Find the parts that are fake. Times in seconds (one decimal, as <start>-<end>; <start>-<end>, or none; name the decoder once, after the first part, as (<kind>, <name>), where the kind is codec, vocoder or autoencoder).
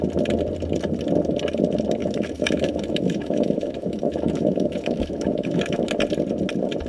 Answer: 2.0-5.9 (autoencoder, DAC-VAE)